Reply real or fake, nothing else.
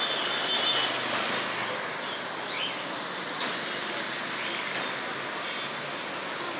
real